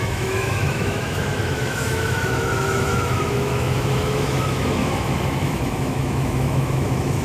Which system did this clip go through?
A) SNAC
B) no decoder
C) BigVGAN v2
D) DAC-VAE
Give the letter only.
D